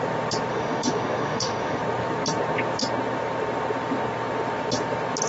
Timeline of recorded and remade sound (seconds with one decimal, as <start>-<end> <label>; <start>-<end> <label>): 0.0-0.5 recorded; 0.5-1.8 remade; 1.8-5.3 recorded